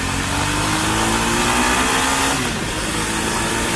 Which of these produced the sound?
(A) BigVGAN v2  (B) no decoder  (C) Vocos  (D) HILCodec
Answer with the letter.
B